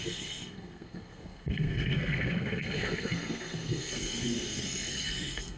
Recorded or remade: remade